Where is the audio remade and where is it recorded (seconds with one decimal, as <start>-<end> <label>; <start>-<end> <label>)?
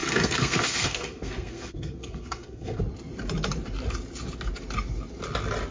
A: 0.0-2.8 remade; 2.8-5.7 recorded